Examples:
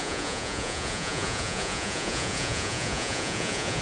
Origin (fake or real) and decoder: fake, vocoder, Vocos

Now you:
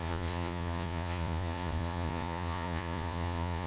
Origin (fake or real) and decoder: fake, vocoder, Vocos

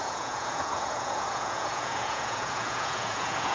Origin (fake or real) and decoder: fake, vocoder, Vocos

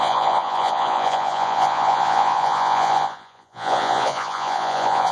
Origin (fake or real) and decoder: fake, vocoder, Vocos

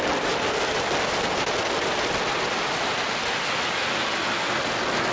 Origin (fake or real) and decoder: real